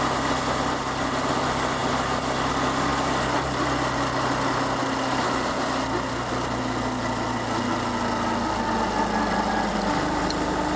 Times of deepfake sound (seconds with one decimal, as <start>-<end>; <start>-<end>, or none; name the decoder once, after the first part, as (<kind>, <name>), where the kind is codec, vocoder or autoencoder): none